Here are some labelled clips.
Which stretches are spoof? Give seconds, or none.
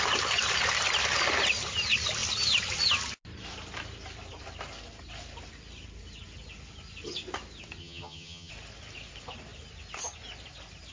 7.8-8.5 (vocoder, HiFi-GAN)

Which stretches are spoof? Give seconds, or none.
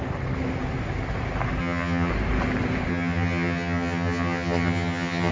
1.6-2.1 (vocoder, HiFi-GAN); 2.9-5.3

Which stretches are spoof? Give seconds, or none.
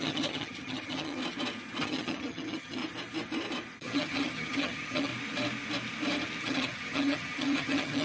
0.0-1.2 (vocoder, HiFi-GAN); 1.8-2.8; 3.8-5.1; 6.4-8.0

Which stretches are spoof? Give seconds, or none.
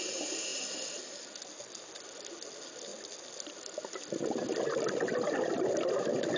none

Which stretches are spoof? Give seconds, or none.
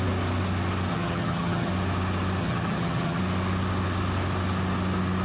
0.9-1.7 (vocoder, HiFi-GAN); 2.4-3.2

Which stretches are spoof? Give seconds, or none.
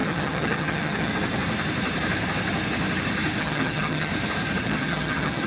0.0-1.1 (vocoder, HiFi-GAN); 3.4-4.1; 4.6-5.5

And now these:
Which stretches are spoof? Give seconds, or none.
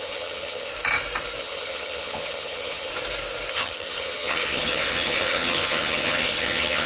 0.0-0.7 (vocoder, HiFi-GAN); 1.4-2.9; 3.5-6.9